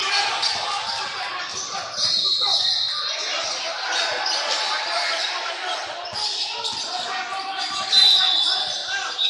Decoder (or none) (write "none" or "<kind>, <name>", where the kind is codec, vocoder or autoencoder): none